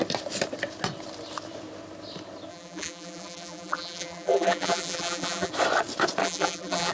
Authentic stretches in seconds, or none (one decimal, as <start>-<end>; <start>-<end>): 0.0-2.5; 5.5-6.2